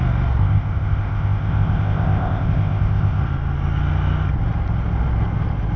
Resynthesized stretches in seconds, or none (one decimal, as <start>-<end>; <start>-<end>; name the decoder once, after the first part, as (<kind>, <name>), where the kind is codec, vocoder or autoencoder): 0.4-3.2 (codec, ZipCodec)